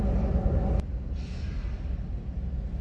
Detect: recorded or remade recorded